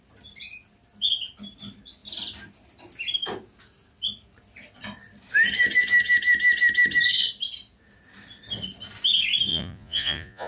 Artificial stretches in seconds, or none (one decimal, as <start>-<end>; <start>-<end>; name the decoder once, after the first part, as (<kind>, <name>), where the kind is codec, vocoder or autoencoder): 9.5-10.5 (vocoder, Vocos)